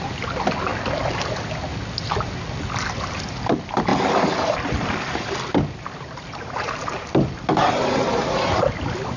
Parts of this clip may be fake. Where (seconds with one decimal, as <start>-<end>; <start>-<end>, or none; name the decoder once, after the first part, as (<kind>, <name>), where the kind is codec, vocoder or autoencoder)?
none